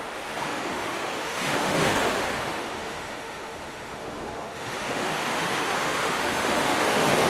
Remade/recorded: remade